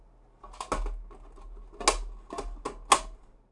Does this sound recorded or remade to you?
recorded